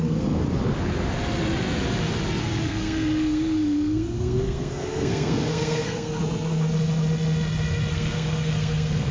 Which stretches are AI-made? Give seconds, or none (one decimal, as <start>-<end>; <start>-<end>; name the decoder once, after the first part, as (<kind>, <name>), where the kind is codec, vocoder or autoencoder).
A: 0.0-0.4 (codec, SNAC); 2.4-6.2; 7.9-9.1